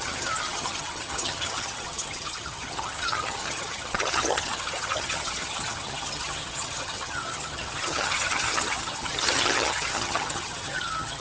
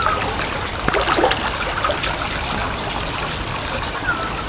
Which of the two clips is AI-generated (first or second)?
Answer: first